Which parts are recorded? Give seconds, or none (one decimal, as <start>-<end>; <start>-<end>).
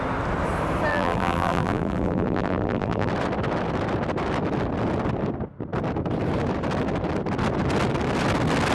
0.0-0.9; 3.1-8.7